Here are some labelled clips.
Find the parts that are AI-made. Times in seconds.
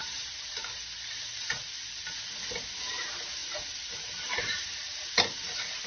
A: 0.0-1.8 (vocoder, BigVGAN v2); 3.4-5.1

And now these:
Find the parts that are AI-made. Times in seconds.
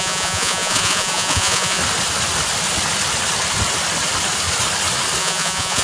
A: 0.0-1.8 (vocoder, Vocos); 5.2-5.8